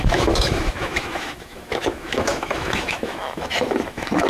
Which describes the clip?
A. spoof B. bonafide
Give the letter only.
A